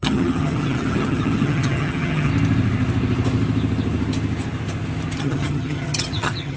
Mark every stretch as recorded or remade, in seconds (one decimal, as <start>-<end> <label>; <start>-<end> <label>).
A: 0.0-2.3 remade; 2.3-5.2 recorded; 5.2-6.6 remade